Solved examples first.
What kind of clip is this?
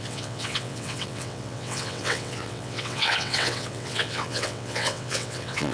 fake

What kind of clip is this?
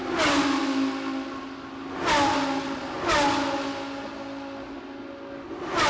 real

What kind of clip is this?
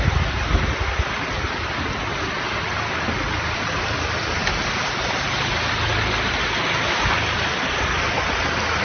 real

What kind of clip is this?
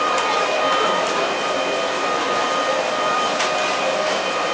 real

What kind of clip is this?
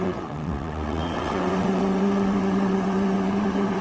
fake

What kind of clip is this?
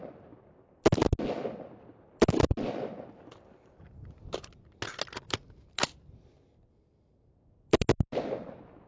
real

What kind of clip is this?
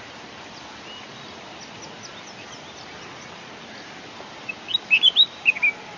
real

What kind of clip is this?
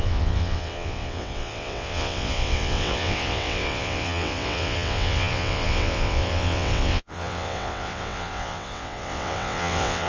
fake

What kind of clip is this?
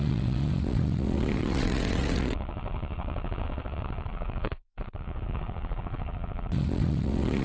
fake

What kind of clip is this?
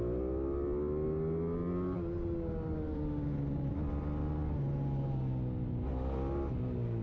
real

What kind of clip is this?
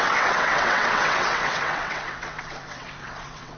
fake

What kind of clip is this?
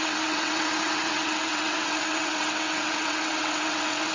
fake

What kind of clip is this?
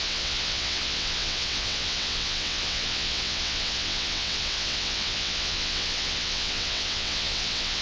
fake